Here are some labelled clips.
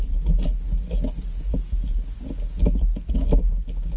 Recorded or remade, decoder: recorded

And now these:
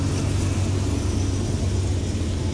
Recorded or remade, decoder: recorded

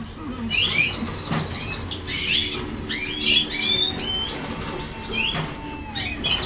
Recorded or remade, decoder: recorded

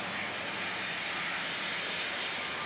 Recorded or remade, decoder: recorded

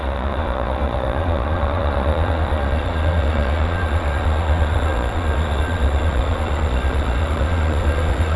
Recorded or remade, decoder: remade, vocoder, Vocos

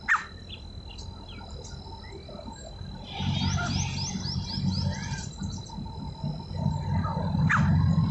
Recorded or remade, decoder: recorded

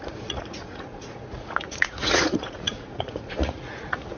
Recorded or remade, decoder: remade, vocoder, Vocos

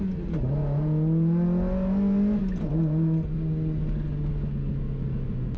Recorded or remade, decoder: recorded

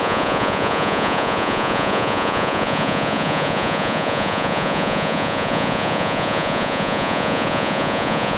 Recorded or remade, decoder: remade, vocoder, Vocos